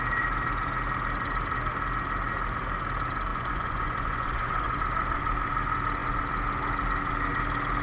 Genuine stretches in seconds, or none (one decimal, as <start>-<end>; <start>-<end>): 0.0-3.3; 4.8-7.8